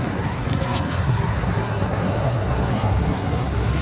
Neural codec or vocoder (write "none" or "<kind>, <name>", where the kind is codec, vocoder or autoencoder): codec, SNAC